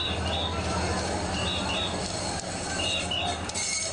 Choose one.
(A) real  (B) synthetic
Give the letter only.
A